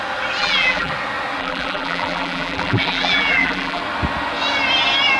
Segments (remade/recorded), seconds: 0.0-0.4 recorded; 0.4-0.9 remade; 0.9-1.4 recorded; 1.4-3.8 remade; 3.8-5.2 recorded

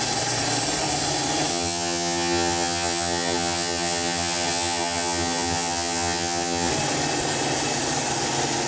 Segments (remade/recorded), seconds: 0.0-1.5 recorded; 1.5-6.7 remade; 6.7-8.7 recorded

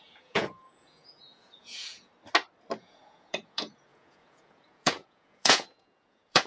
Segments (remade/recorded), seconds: 0.0-2.1 remade; 2.1-2.8 recorded; 2.8-6.5 remade

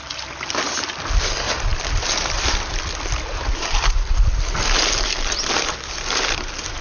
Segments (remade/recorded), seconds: 0.0-6.8 recorded